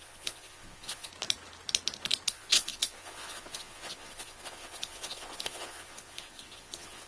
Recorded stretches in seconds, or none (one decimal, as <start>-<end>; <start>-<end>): 1.1-2.3